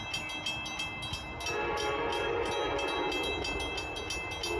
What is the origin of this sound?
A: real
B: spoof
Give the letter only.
A